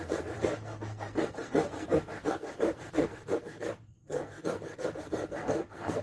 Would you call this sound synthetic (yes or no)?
yes